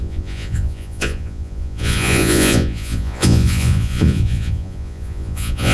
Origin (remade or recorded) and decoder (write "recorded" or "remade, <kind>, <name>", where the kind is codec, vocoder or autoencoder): remade, vocoder, Vocos